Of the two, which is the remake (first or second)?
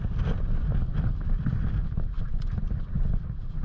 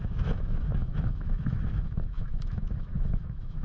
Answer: second